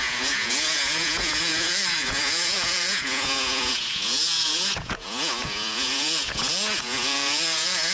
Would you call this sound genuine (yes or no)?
no